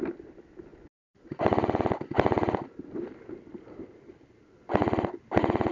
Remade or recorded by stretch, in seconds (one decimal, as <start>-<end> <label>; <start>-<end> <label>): 0.0-5.7 recorded